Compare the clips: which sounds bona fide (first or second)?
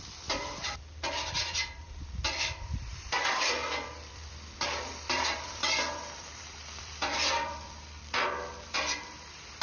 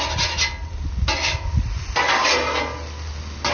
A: second